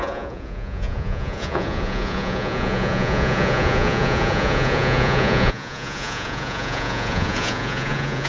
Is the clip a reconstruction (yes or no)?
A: yes